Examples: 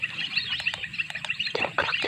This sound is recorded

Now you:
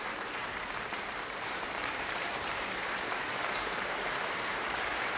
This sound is remade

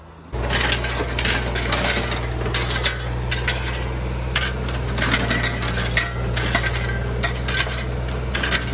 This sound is recorded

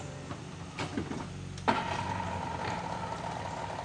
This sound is recorded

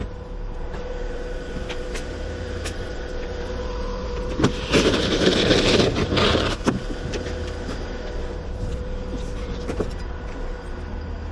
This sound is remade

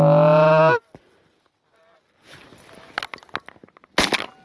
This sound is recorded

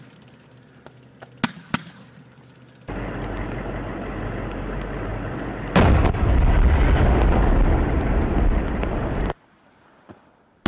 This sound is recorded